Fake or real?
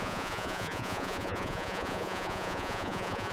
fake